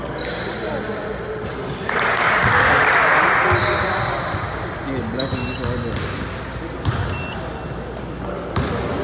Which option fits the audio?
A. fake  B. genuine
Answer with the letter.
B